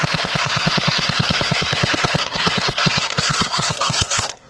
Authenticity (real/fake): fake